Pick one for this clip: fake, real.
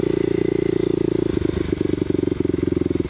real